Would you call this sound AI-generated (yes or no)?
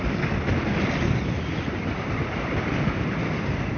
no